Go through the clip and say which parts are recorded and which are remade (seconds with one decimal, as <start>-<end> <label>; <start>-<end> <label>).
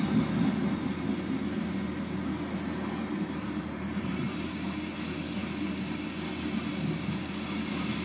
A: 0.0-3.1 recorded; 3.1-4.5 remade; 4.5-8.0 recorded